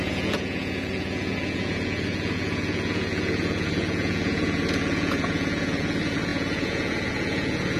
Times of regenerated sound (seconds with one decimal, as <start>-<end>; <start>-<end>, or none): 0.0-7.8